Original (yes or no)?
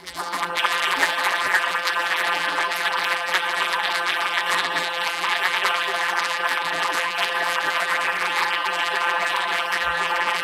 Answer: no